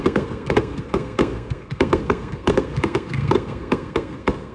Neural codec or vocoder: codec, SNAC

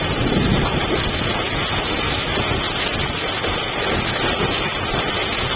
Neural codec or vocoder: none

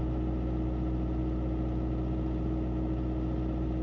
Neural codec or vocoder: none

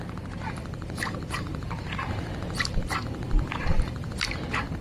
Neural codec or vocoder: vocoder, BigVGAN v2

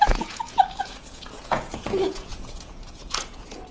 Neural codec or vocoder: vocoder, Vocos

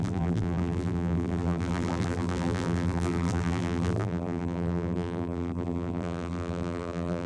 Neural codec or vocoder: vocoder, BigVGAN v2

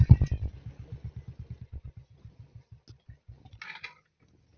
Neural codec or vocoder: none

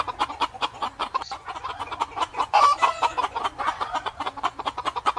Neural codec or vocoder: vocoder, Vocos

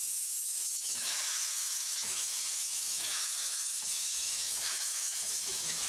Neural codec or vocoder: autoencoder, DAC-VAE